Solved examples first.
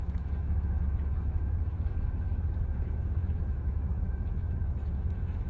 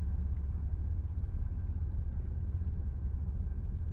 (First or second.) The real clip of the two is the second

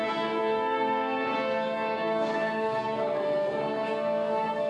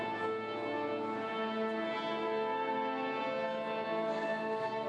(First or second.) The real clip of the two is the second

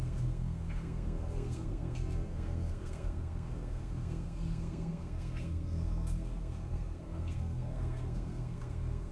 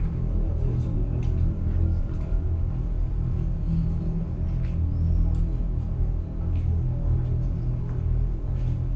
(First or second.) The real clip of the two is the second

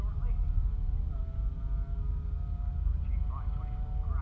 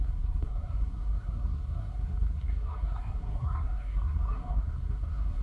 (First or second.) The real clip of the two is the first